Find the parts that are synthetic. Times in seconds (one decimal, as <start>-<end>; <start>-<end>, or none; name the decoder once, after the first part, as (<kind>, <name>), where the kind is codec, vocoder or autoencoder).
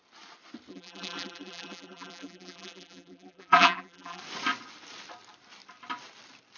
0.7-4.2 (vocoder, BigVGAN v2)